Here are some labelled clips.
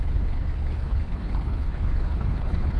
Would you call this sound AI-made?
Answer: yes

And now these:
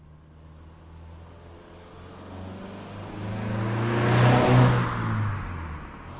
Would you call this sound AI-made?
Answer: no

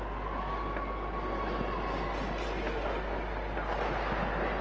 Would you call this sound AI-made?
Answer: no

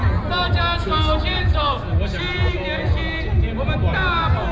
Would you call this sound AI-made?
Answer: no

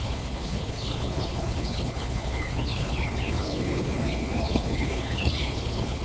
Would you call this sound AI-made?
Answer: yes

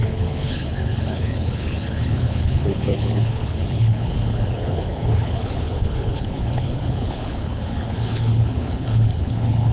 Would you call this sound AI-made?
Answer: yes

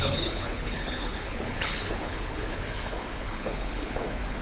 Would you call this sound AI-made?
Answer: yes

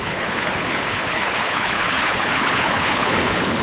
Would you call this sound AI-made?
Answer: yes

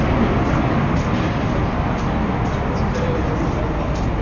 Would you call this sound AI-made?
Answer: no